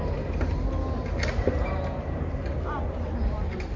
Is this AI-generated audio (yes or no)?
no